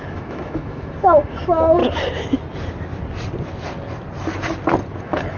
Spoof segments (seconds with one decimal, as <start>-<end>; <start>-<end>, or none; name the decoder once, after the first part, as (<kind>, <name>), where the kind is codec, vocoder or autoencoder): 0.0-1.8 (autoencoder, DAC-VAE); 5.0-5.4